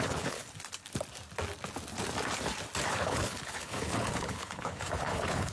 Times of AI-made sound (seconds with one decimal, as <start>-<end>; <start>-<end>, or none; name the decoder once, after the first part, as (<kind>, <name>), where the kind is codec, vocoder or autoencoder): 0.0-0.4 (codec, HILCodec); 2.9-5.5